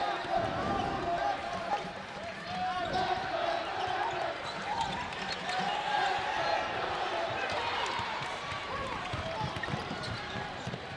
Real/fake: fake